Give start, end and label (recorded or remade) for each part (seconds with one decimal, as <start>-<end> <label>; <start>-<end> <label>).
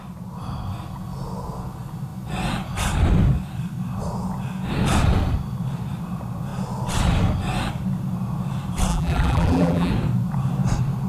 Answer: 0.0-8.9 recorded; 8.9-9.9 remade; 9.9-11.1 recorded